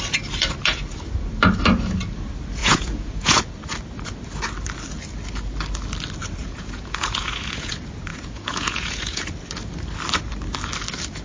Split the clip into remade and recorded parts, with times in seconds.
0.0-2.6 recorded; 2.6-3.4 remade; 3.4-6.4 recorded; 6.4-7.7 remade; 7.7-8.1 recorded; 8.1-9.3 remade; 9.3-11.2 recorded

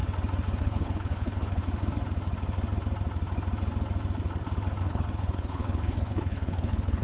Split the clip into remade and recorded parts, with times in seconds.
0.0-0.6 recorded; 0.6-1.6 remade; 1.6-4.8 recorded; 4.8-7.0 remade